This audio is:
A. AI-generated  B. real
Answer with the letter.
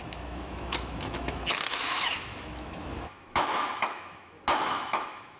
A